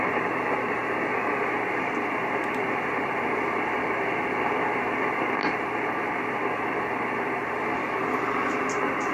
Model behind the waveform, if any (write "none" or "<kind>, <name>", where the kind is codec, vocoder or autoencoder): vocoder, BigVGAN v2